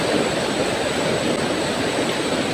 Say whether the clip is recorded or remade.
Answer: recorded